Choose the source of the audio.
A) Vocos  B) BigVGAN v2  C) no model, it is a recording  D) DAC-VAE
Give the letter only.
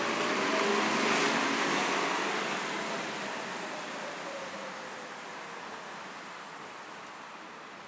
C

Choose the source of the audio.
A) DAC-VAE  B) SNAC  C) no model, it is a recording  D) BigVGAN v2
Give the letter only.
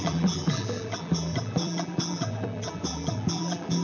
D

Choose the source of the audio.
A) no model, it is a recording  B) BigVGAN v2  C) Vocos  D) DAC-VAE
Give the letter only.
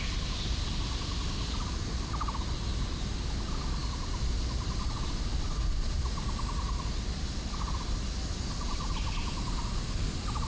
A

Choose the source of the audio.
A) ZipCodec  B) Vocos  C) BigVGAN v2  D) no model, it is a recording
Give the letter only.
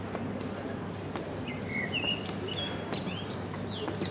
D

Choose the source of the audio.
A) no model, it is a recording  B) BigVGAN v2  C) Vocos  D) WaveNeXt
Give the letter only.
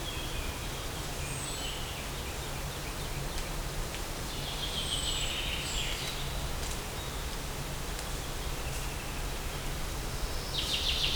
A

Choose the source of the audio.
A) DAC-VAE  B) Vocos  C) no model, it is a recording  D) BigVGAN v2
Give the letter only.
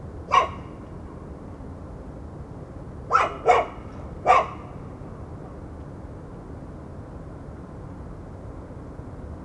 C